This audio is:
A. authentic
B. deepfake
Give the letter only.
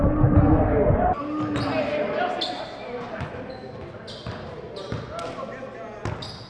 A